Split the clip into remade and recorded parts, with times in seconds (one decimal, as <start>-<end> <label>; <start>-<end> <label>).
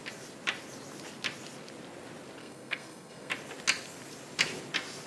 0.0-2.4 recorded; 2.4-3.3 remade; 3.3-5.1 recorded